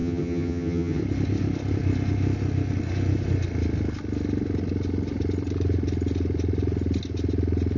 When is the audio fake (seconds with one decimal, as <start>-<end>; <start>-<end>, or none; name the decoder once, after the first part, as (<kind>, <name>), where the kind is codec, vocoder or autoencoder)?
0.0-1.0 (vocoder, HiFi-GAN)